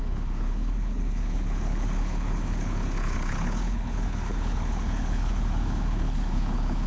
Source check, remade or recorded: remade